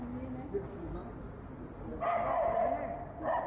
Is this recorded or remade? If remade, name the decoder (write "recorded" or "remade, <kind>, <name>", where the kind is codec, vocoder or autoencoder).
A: recorded